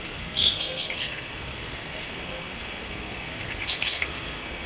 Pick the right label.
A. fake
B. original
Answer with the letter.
A